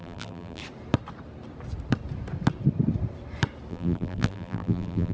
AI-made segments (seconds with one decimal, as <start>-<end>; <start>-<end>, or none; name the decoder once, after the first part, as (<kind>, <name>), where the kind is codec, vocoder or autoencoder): 0.0-0.6 (vocoder, BigVGAN v2); 3.7-5.1